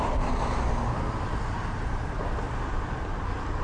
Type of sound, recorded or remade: recorded